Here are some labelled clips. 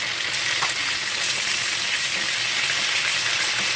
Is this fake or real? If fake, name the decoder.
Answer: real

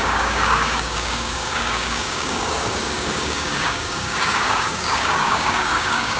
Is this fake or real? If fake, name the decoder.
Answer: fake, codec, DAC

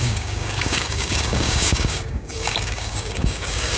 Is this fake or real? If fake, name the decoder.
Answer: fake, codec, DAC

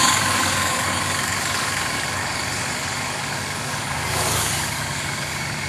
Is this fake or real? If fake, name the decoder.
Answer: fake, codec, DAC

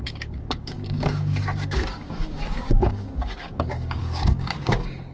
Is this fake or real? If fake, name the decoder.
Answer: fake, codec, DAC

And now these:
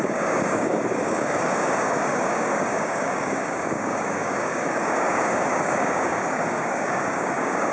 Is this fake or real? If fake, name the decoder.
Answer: fake, codec, DAC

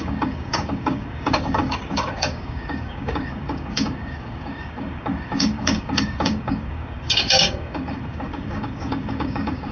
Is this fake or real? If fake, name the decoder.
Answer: fake, codec, DAC